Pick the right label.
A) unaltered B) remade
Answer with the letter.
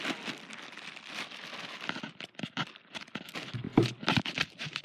A